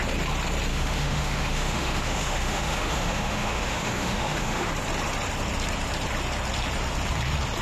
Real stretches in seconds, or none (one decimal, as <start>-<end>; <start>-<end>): 0.0-0.7; 4.7-7.6